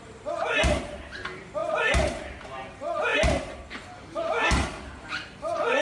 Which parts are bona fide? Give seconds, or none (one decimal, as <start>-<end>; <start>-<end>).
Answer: 0.0-5.8